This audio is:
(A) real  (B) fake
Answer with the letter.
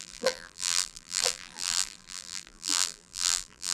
B